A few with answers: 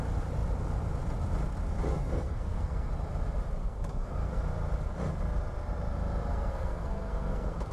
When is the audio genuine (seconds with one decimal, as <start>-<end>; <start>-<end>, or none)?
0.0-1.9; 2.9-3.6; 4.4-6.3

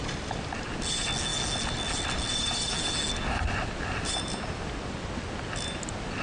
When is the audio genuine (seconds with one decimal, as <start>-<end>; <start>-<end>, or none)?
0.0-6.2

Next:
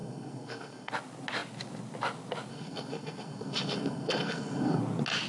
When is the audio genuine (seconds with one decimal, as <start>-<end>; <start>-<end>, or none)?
0.9-2.5; 4.8-5.3

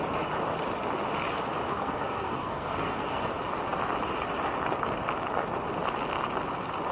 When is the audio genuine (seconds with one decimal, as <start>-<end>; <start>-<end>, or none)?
0.0-1.7; 3.3-6.9